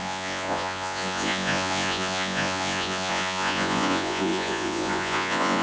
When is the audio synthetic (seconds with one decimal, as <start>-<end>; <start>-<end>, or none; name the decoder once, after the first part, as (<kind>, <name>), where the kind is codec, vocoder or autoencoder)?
0.0-5.6 (vocoder, Vocos)